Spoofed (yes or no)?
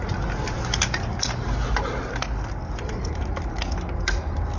no